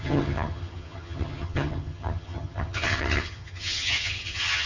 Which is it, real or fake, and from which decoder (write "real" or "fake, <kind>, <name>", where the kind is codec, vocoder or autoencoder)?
fake, vocoder, HiFi-GAN